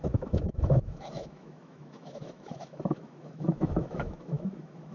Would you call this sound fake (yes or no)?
yes